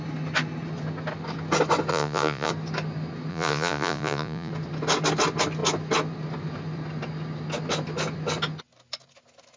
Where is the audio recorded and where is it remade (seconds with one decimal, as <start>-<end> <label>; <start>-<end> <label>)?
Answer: 0.0-1.9 recorded; 1.9-2.5 remade; 2.5-3.3 recorded; 3.3-4.5 remade; 4.5-9.6 recorded